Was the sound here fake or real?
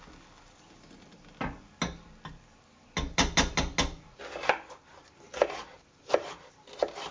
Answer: real